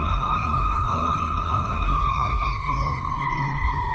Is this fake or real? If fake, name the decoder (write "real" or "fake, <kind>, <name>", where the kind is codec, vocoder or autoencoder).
fake, codec, SNAC